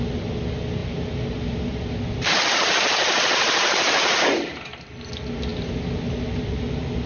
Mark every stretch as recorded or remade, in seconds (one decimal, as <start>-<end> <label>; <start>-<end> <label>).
0.0-7.1 recorded